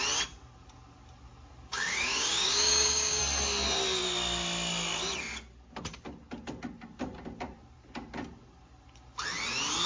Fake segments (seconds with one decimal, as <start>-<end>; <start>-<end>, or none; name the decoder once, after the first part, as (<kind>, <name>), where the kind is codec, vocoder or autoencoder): 1.7-3.2 (codec, DAC)